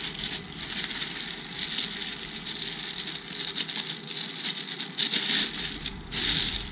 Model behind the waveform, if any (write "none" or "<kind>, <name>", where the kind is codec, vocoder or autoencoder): none